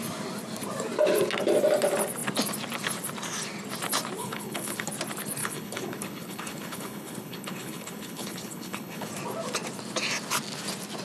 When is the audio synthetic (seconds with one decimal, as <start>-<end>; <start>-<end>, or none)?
4.2-4.9; 5.4-9.1